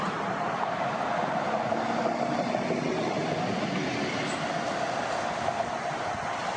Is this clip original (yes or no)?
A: yes